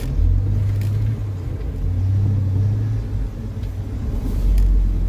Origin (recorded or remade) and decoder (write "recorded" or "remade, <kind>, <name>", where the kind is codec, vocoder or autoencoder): recorded